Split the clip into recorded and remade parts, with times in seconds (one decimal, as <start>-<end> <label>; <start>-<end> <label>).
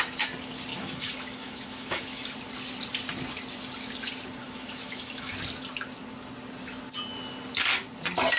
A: 0.0-0.7 recorded; 0.7-2.3 remade; 2.3-4.4 recorded; 4.4-5.3 remade; 5.3-8.4 recorded